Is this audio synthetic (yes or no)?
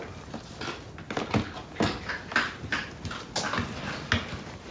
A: no